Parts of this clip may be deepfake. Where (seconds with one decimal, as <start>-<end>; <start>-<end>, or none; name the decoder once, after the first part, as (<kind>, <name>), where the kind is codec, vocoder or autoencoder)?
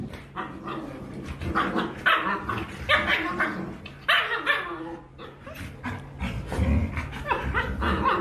3.1-5.8 (vocoder, BigVGAN v2); 6.8-8.2